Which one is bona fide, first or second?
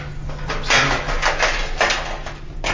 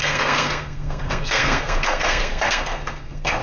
first